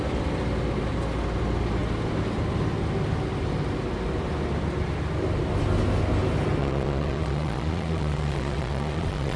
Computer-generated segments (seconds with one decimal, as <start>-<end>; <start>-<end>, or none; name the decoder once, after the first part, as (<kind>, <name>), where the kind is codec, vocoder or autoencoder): 6.6-9.4 (vocoder, Vocos)